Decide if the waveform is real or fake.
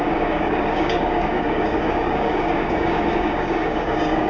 fake